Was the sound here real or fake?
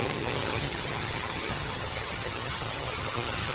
fake